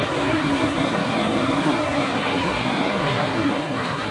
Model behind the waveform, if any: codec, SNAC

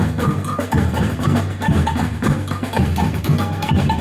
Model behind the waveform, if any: codec, SNAC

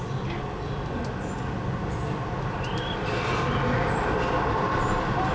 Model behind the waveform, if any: none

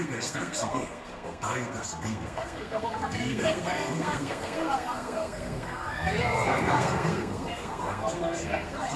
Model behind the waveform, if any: codec, SNAC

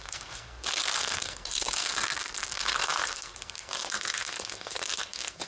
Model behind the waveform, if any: codec, SNAC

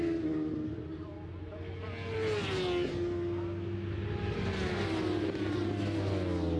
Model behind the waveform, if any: none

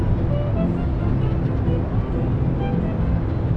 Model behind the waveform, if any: none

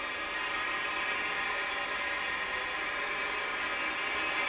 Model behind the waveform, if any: none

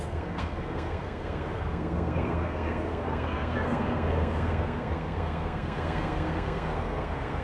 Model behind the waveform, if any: codec, SNAC